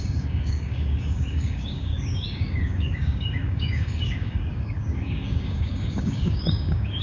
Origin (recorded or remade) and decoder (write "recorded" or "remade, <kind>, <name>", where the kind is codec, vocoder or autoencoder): remade, codec, DAC